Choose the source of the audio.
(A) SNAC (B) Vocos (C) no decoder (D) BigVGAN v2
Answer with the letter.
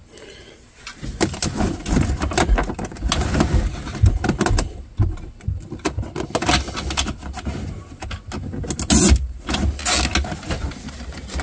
C